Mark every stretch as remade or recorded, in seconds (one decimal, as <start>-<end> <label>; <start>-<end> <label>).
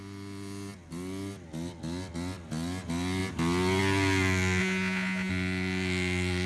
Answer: 0.0-4.6 recorded; 4.6-5.3 remade; 5.3-6.5 recorded